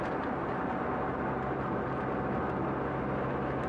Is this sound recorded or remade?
recorded